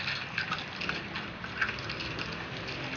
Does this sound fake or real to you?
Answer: real